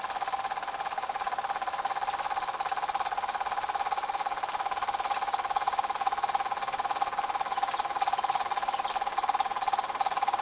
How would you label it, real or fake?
real